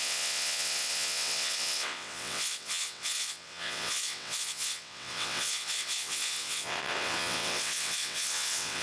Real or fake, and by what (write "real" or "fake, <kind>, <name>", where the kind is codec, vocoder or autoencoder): fake, vocoder, WaveNeXt